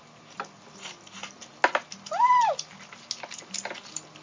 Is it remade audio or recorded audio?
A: recorded